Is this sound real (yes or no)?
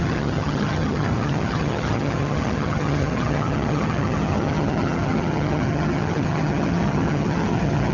no